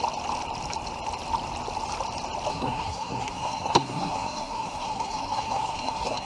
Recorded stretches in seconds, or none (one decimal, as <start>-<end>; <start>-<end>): 0.0-2.5